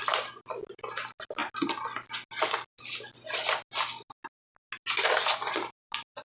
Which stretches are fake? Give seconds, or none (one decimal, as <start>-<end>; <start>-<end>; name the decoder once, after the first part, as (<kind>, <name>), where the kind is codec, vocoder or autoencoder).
none

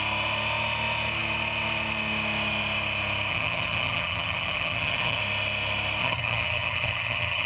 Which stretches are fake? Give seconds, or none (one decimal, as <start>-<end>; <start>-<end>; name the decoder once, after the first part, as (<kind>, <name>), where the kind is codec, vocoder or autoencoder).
3.3-5.2 (vocoder, HiFi-GAN); 6.0-7.5